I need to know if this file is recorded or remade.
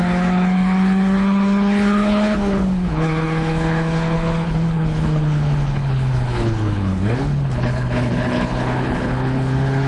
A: remade